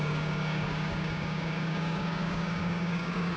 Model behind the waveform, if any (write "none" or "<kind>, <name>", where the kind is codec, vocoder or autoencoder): codec, DAC